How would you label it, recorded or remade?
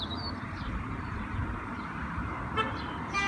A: remade